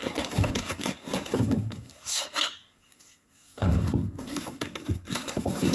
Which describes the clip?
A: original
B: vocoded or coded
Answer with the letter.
B